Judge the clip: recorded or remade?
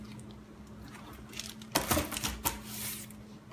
recorded